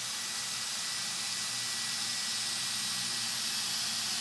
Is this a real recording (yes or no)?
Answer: yes